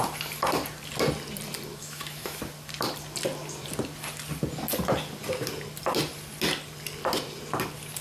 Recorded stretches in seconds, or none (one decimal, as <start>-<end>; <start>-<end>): 0.0-1.8; 2.4-8.0